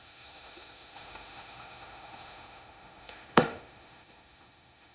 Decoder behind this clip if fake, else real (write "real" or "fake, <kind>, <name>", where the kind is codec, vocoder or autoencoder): fake, autoencoder, DAC-VAE